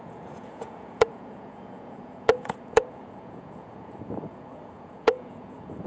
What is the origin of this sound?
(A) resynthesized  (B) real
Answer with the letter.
A